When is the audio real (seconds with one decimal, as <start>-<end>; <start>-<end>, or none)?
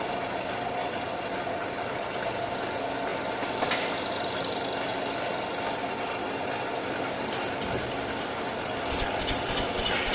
0.0-10.1